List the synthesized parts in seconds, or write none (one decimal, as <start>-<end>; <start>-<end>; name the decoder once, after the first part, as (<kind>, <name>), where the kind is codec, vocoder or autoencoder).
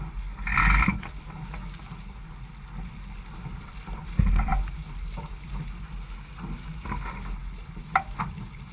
none